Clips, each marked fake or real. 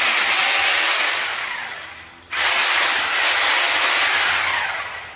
real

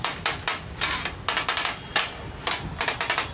real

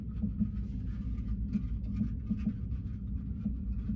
real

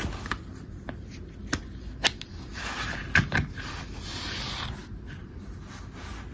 real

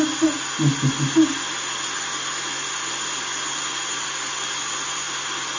real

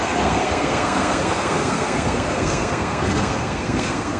fake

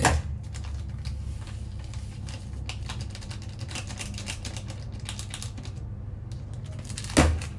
real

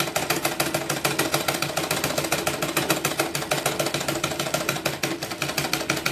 real